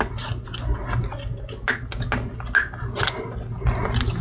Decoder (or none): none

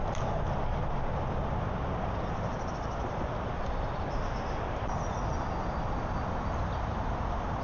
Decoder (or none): none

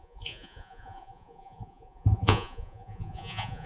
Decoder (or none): vocoder, Vocos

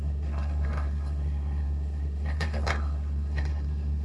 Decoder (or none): codec, SNAC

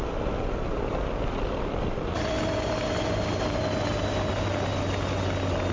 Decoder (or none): none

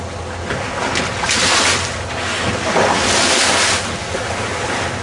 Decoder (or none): none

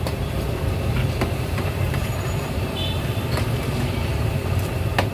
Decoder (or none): vocoder, BigVGAN v2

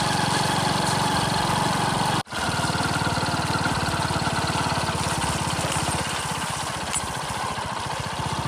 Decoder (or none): none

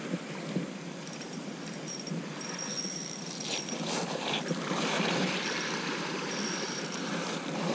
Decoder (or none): vocoder, BigVGAN v2